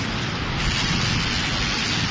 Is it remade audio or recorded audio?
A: recorded